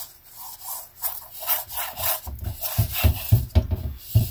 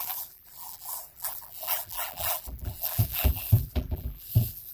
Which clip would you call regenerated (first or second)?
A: second